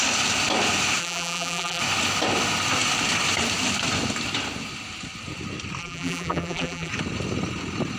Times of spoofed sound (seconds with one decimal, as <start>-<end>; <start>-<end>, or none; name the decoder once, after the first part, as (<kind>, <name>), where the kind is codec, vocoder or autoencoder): 1.0-1.8 (vocoder, BigVGAN v2); 5.8-6.9